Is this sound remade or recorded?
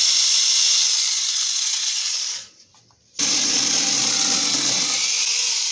recorded